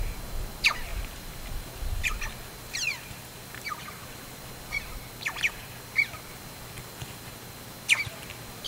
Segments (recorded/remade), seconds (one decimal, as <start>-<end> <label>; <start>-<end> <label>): 0.0-8.7 recorded